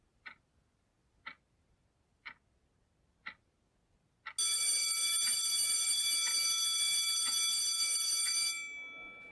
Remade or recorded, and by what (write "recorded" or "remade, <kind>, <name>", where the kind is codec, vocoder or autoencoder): recorded